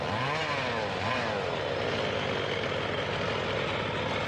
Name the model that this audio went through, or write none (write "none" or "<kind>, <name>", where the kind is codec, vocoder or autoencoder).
none